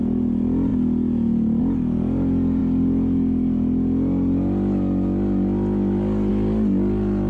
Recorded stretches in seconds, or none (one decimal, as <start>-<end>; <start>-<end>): 0.0-7.3